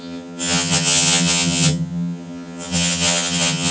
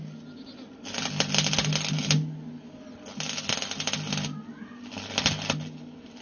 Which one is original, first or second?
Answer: second